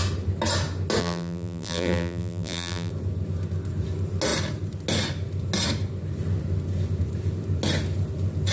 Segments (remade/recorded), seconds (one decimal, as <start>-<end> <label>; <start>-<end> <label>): 0.0-1.0 recorded; 1.0-2.9 remade; 2.9-8.5 recorded